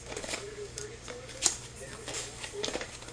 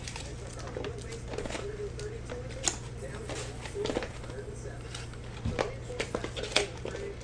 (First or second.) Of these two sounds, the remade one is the first